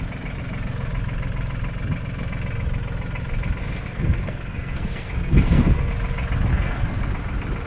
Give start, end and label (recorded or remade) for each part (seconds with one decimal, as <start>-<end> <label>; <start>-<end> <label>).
0.0-3.6 recorded; 3.6-5.9 remade; 5.9-6.5 recorded; 6.5-7.1 remade; 7.1-7.7 recorded